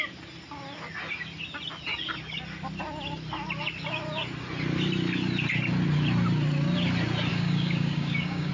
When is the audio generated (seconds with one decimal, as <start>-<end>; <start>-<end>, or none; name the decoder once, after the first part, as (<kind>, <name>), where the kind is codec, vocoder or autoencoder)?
7.3-8.5 (codec, DAC)